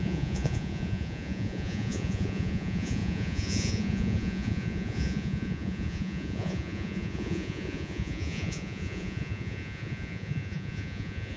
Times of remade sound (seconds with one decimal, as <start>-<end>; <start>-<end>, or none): 0.0-11.4